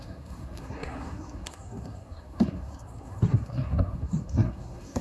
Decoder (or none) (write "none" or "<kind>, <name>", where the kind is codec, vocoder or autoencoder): codec, SNAC